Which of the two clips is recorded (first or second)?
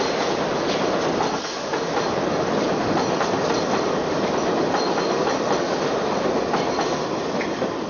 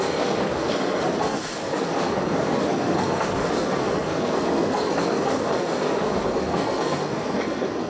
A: first